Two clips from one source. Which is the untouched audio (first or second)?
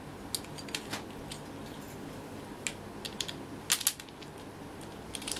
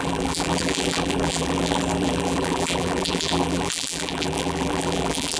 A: first